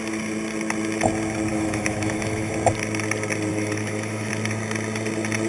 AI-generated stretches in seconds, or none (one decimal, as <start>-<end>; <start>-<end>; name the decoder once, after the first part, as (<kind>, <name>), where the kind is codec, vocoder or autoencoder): 1.5-2.5 (autoencoder, DAC-VAE); 3.5-4.3